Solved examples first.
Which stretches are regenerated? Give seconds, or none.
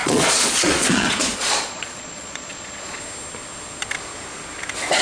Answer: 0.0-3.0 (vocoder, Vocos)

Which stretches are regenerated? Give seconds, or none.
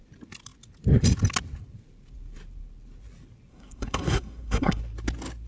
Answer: 3.5-4.8 (codec, SNAC)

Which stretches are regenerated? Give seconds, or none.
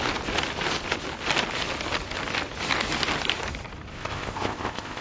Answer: 3.9-5.0 (codec, ZipCodec)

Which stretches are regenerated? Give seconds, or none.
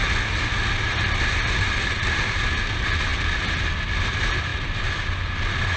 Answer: 0.9-2.2 (vocoder, BigVGAN v2); 4.5-5.3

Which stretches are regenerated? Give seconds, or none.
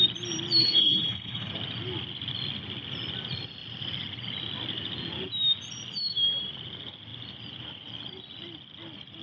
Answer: 0.6-1.5 (codec, HILCodec)